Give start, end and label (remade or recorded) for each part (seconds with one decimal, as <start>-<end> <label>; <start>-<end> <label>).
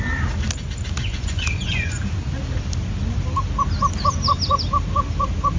0.0-1.0 recorded; 1.0-2.0 remade; 2.0-5.6 recorded